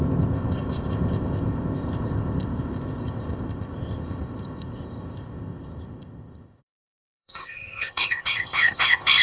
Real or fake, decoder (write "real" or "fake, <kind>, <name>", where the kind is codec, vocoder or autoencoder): fake, codec, ZipCodec